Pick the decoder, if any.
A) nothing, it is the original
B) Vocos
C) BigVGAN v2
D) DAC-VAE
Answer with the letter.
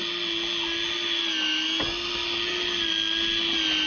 A